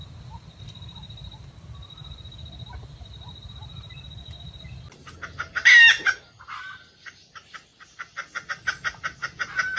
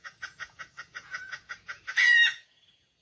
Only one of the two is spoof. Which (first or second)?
second